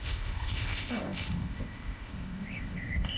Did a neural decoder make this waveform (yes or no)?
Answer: yes